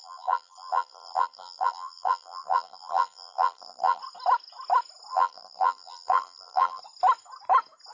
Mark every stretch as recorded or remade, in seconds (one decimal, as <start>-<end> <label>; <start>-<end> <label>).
0.0-4.0 remade; 4.0-5.1 recorded; 5.1-6.8 remade; 6.8-7.9 recorded